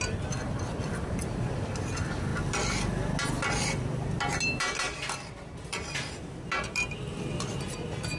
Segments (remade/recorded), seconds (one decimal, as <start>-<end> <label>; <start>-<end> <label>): 0.0-8.2 recorded